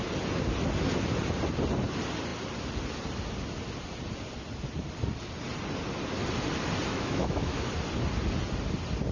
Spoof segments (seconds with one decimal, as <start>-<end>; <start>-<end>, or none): 6.9-7.7